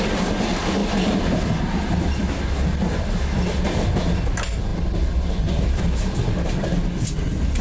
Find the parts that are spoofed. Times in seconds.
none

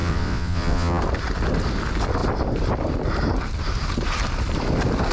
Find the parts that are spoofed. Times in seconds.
0.0-1.0 (vocoder, WaveNeXt)

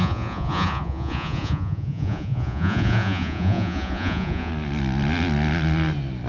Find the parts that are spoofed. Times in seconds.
0.0-4.5 (vocoder, Vocos)

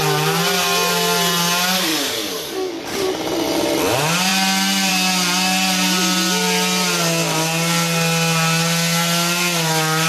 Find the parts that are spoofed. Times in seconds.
1.9-2.8 (codec, DAC)

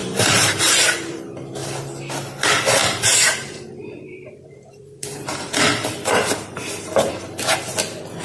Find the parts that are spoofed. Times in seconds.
0.0-1.2 (vocoder, BigVGAN v2); 2.8-7.1

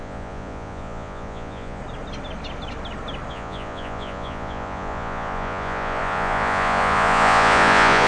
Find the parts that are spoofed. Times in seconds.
0.0-1.8 (vocoder, Vocos); 3.3-8.1

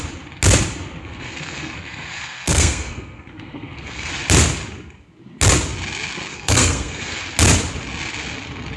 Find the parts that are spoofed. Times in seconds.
1.0-4.1 (codec, SNAC); 6.3-7.2

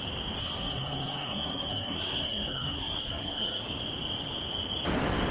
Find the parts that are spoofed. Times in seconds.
0.4-3.6 (codec, SNAC)